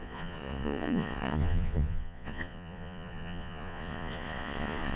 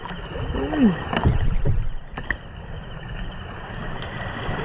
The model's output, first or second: first